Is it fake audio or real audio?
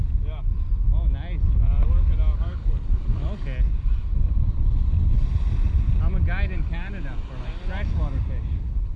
real